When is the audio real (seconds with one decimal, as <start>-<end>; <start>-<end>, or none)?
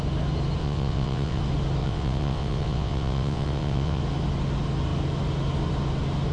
0.0-0.6; 1.4-1.8; 4.0-6.3